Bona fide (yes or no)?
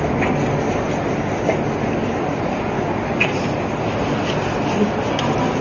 yes